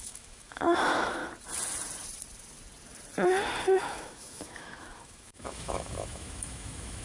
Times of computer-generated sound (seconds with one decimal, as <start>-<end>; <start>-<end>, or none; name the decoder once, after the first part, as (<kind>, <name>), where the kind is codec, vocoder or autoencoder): 0.0-1.2 (autoencoder, DAC-VAE); 3.8-7.0